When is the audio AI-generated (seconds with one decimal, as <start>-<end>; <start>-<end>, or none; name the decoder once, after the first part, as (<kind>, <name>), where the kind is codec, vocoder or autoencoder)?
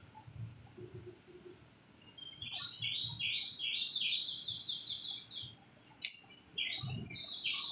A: none